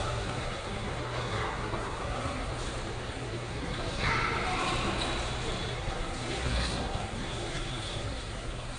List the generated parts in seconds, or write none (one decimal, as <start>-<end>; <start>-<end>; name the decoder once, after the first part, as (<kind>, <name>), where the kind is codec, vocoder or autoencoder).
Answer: 0.0-2.5 (codec, SNAC); 3.1-4.1; 5.7-8.8